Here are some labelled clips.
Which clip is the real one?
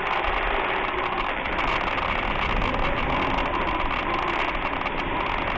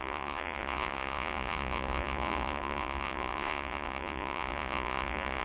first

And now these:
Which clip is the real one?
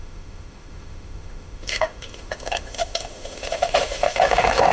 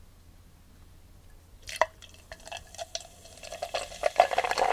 second